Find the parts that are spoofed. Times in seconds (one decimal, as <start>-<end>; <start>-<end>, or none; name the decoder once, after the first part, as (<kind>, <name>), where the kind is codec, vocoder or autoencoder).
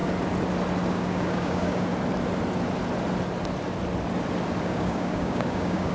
0.9-1.9 (codec, DAC); 4.6-5.9